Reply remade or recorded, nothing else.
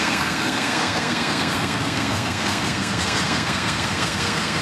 remade